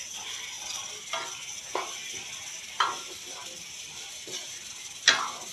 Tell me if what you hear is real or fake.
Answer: real